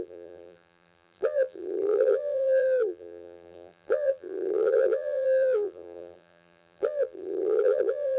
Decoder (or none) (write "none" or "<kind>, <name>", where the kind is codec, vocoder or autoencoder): vocoder, BigVGAN v2